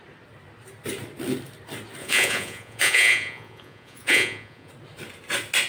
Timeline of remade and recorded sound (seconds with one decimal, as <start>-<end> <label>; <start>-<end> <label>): 0.0-2.0 recorded; 2.0-4.7 remade; 4.7-5.7 recorded